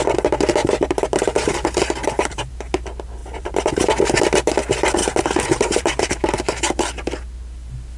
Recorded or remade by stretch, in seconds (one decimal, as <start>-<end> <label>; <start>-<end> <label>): 0.0-0.6 recorded; 0.6-2.5 remade; 2.5-3.2 recorded; 3.2-4.2 remade; 4.2-5.0 recorded; 5.0-6.6 remade; 6.6-8.0 recorded